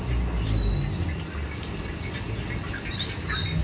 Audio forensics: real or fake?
real